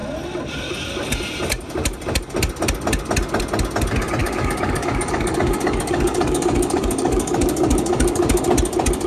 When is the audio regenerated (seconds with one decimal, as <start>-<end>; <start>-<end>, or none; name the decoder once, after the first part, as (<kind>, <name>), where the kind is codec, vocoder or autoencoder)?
4.2-8.4 (codec, DAC)